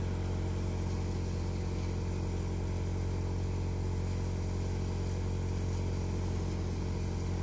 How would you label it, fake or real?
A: real